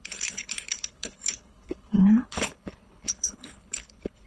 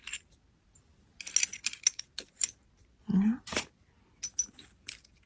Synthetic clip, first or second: first